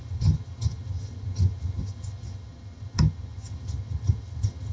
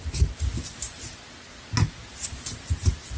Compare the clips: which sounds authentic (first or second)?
second